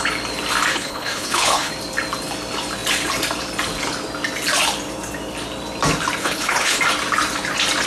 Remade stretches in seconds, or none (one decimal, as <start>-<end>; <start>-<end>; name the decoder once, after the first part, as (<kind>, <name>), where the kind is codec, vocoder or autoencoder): 0.7-1.7 (codec, HILCodec); 6.2-6.8